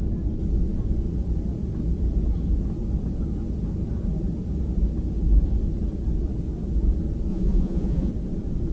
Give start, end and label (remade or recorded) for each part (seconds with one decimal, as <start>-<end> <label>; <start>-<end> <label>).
0.0-7.3 recorded; 7.3-8.1 remade; 8.1-8.7 recorded